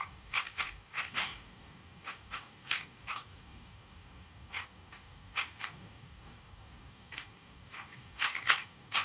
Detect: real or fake fake